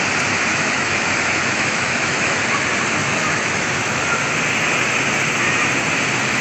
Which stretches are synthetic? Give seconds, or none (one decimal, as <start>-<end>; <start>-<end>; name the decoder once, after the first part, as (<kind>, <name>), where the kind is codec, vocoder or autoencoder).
0.5-2.4 (autoencoder, DAC-VAE); 3.0-4.0